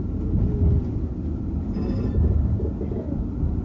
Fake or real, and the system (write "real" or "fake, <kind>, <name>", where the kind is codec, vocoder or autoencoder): real